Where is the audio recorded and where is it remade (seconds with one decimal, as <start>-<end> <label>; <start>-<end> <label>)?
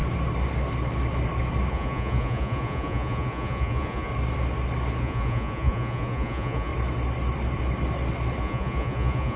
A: 0.0-1.7 recorded; 1.7-4.1 remade; 4.1-5.0 recorded; 5.0-6.7 remade; 6.7-8.4 recorded; 8.4-9.4 remade